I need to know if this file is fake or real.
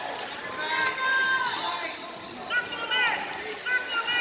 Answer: real